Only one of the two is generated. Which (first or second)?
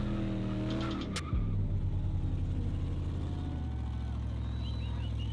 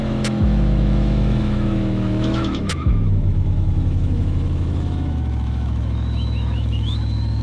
second